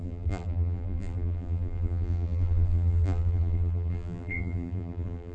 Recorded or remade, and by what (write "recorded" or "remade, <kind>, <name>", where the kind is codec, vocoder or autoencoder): remade, vocoder, BigVGAN v2